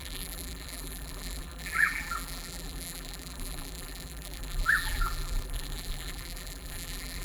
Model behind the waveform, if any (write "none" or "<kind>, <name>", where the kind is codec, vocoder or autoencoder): vocoder, BigVGAN v2